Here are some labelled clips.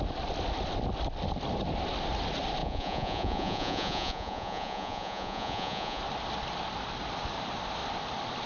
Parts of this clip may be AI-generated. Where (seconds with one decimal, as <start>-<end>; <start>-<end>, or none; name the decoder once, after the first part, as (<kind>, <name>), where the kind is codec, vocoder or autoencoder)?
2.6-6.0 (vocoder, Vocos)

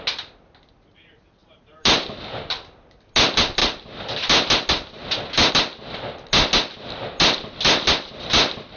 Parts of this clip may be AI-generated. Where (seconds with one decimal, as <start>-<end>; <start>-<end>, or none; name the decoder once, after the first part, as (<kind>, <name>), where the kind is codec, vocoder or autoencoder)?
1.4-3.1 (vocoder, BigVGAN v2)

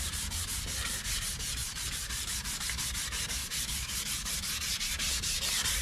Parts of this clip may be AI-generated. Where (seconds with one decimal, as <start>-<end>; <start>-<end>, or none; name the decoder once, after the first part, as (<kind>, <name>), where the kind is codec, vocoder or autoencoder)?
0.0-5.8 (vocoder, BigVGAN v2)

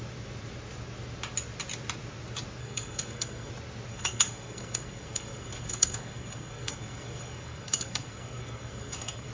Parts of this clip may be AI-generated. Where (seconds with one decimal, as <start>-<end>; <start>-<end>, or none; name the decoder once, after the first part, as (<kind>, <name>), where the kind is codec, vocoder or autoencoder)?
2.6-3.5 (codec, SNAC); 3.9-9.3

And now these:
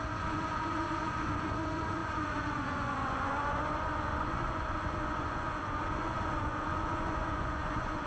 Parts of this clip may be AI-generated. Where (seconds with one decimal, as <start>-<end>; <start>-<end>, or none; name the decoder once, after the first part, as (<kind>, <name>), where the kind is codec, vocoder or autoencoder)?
0.0-8.1 (vocoder, Vocos)